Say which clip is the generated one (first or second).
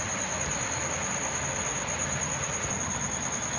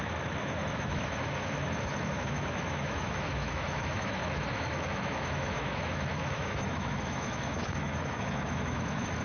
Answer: second